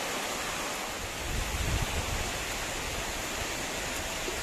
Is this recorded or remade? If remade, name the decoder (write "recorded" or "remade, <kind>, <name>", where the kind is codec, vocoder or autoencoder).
recorded